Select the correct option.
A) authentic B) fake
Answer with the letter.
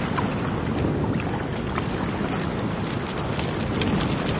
A